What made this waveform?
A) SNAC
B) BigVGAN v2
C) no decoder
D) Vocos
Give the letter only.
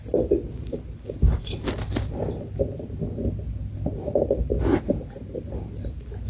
C